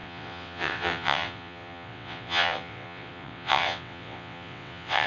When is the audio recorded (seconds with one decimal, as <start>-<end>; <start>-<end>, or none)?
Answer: none